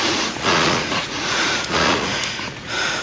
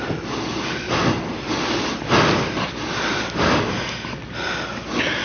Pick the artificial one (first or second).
first